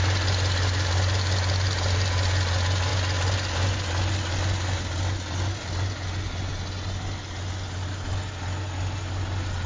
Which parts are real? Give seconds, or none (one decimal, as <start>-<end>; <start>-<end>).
0.0-9.7

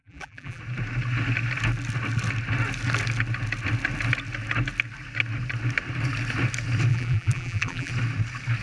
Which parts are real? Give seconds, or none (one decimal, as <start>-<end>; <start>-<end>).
0.6-6.9; 7.9-8.6

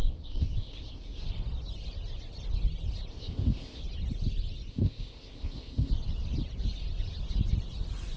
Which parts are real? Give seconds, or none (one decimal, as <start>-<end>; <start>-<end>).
1.2-3.1; 3.8-4.7; 5.9-8.2

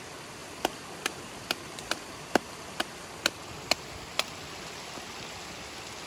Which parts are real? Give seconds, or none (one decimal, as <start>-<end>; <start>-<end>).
0.0-6.1

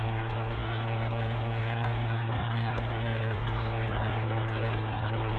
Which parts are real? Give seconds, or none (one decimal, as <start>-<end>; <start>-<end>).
none